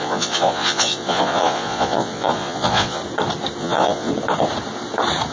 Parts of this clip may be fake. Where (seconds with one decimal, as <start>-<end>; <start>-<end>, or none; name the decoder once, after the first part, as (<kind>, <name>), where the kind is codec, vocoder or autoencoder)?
0.0-3.0 (vocoder, Vocos); 3.6-4.1

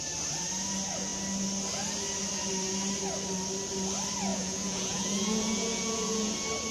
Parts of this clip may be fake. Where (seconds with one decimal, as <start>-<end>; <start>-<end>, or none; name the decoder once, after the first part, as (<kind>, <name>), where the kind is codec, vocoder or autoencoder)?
4.3-6.3 (vocoder, Vocos)